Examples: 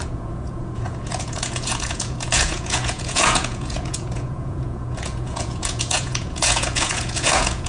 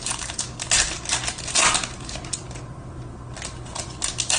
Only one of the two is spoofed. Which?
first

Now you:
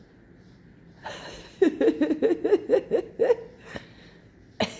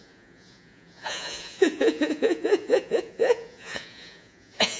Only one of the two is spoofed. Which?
second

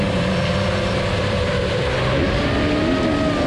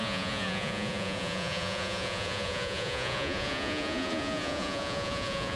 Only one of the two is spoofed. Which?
second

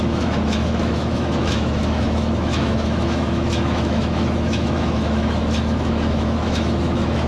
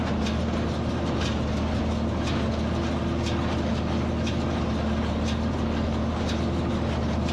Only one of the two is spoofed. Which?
first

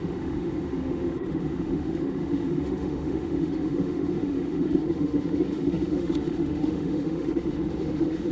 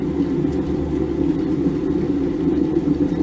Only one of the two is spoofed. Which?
first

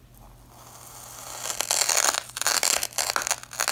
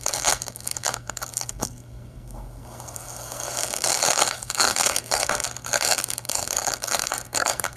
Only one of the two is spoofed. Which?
second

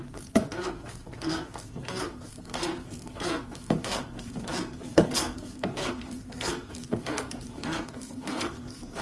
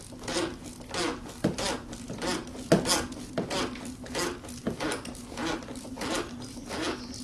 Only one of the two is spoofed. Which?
first